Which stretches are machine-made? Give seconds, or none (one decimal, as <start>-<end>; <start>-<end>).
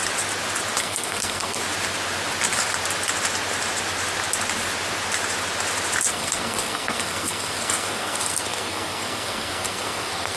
0.8-1.6; 6.1-10.4